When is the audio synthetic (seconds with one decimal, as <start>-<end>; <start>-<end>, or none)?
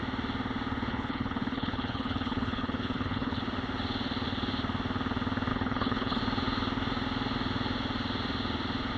0.9-3.4; 5.5-6.2